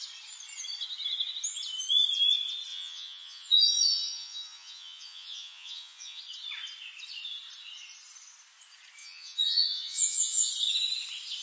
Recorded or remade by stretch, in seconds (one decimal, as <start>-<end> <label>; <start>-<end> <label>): 0.0-2.7 recorded; 2.7-6.2 remade; 6.2-9.0 recorded; 9.0-10.5 remade; 10.5-11.4 recorded

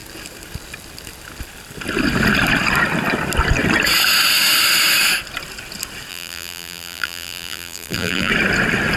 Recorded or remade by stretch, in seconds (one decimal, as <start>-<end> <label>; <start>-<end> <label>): 0.0-6.1 recorded; 6.1-8.3 remade; 8.3-9.0 recorded

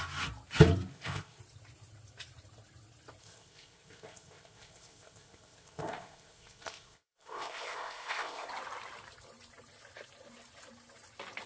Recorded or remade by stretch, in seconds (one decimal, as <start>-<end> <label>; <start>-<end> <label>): 0.0-0.9 recorded; 0.9-1.4 remade; 1.4-3.2 recorded; 3.2-8.5 remade; 8.5-11.5 recorded

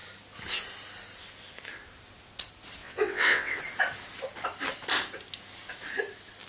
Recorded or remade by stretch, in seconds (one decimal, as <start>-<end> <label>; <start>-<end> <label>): 0.0-2.8 recorded; 2.8-3.6 remade; 3.6-6.5 recorded